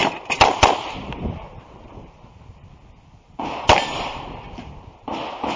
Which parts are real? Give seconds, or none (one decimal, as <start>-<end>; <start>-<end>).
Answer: 0.0-5.6